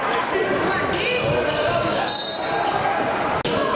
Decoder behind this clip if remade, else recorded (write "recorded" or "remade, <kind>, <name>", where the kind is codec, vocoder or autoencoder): recorded